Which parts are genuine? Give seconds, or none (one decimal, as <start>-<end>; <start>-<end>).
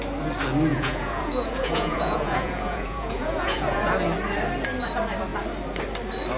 0.0-0.7; 3.9-6.4